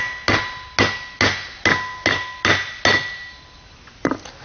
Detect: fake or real real